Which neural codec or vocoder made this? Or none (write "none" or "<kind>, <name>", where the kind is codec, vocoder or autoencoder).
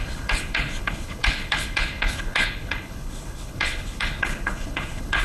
codec, HILCodec